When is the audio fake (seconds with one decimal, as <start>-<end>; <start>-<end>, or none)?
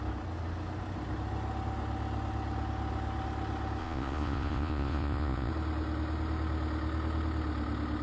3.8-5.5